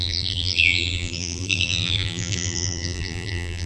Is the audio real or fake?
fake